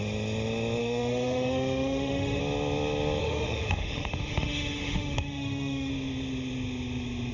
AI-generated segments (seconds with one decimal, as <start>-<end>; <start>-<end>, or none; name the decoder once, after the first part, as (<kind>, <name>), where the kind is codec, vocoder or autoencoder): 0.8-2.4 (autoencoder, DAC-VAE); 3.2-5.9